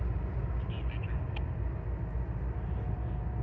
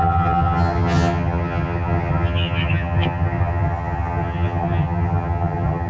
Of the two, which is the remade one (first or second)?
second